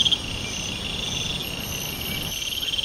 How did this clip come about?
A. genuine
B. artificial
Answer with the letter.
A